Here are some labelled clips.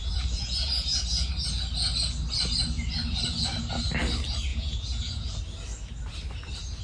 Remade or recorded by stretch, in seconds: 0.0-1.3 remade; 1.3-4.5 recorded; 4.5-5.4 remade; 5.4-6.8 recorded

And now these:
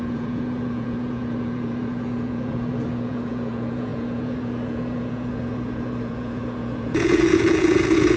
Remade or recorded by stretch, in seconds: 0.0-8.2 remade

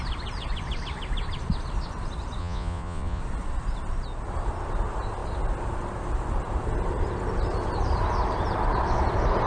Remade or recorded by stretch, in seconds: 0.0-2.4 recorded; 2.4-3.2 remade; 3.2-9.5 recorded

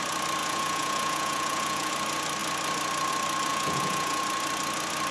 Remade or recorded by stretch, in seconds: 0.0-0.4 recorded; 0.4-1.9 remade; 1.9-3.5 recorded; 3.5-4.2 remade; 4.2-5.1 recorded

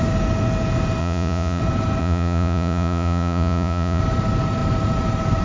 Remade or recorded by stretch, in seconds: 0.0-1.0 recorded; 1.0-1.6 remade; 1.6-2.0 recorded; 2.0-4.0 remade; 4.0-5.4 recorded

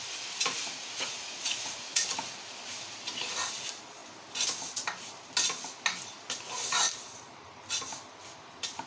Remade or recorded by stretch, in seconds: 0.0-0.6 recorded; 0.6-2.0 remade; 2.0-8.9 recorded

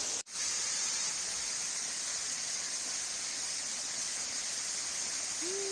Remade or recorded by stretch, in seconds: 0.0-2.1 recorded; 2.1-2.7 remade; 2.7-3.6 recorded; 3.6-4.4 remade; 4.4-5.7 recorded

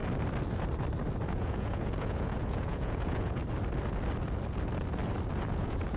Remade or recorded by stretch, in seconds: 0.0-1.3 recorded; 1.3-3.4 remade; 3.4-5.5 recorded; 5.5-6.0 remade